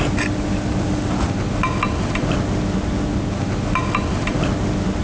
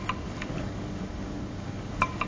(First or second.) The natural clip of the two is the first